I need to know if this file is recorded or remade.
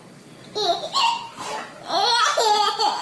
recorded